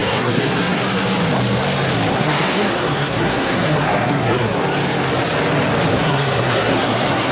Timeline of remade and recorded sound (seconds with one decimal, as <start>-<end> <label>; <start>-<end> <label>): 0.0-0.8 remade; 0.8-2.1 recorded; 2.1-4.6 remade; 4.6-5.9 recorded; 5.9-7.3 remade